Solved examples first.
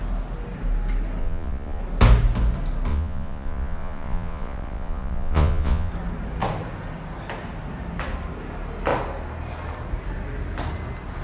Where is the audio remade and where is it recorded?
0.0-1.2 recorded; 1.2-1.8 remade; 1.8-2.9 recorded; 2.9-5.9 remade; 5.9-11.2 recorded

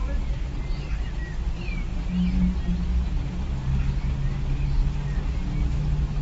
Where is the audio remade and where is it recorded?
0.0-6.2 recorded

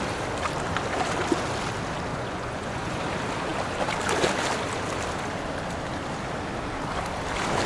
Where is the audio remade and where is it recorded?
0.0-2.1 recorded; 2.1-3.0 remade; 3.0-7.7 recorded

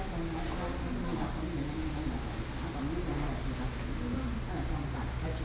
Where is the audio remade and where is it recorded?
0.0-5.4 recorded